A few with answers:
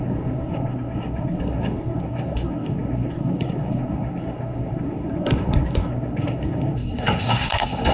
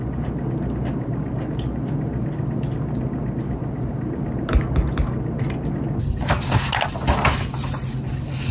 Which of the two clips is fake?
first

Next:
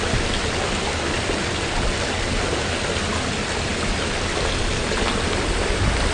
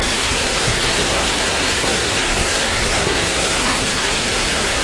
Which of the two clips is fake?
second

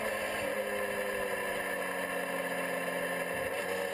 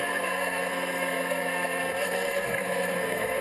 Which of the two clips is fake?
second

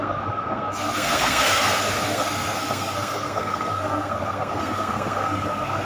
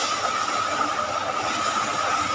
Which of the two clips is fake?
first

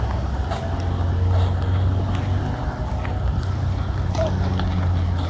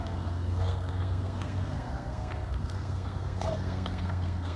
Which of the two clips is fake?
second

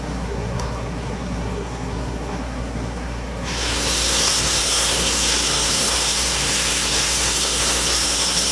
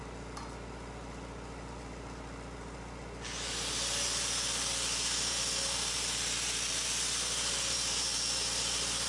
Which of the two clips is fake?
first